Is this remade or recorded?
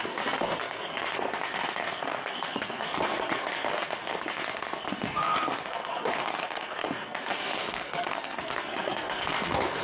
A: remade